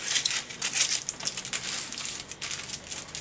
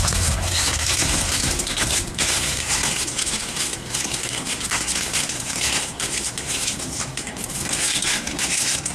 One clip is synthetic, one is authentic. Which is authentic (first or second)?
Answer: first